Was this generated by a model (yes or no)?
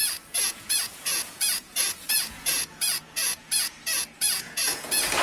yes